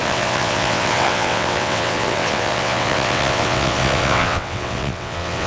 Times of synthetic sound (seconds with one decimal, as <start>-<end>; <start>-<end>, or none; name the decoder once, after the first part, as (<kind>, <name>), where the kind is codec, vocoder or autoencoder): 0.0-5.5 (vocoder, WaveNeXt)